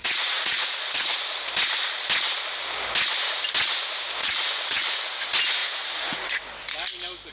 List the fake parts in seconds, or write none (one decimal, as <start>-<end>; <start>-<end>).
0.0-1.1; 4.2-5.0; 5.6-6.4